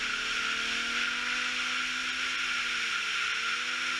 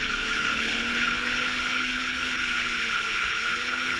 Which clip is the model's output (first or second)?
second